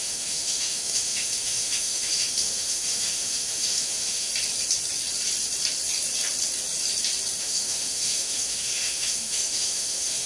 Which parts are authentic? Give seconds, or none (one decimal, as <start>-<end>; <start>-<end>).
4.3-7.4